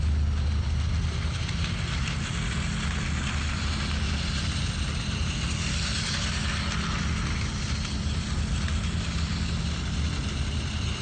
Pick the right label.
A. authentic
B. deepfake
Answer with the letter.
A